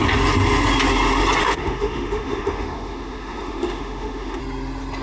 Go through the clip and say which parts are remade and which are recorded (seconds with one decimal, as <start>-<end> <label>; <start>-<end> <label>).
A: 0.0-1.4 recorded; 1.4-4.4 remade; 4.4-5.0 recorded